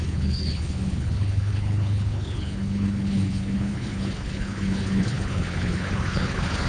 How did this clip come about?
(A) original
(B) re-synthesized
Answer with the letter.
B